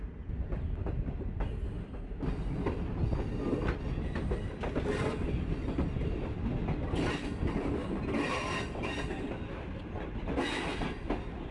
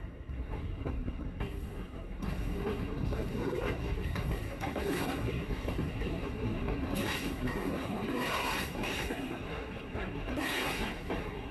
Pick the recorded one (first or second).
first